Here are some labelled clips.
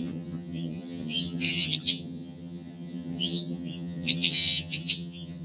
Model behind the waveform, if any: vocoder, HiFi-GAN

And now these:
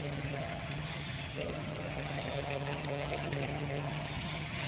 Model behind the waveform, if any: vocoder, HiFi-GAN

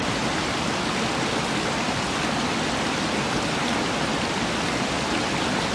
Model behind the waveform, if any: none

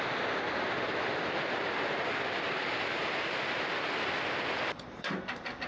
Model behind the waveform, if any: none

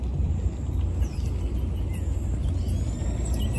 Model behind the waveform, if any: none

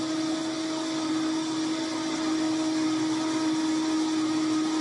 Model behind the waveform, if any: none